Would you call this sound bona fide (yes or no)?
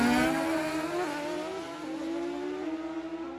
yes